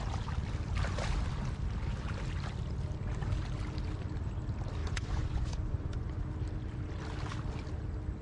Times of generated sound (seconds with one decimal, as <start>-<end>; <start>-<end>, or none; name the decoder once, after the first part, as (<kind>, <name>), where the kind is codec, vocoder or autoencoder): 4.8-6.2 (vocoder, Vocos)